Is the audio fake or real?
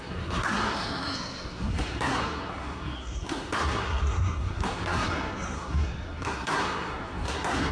fake